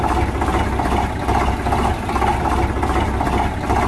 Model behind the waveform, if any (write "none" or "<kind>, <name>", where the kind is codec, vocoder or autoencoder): none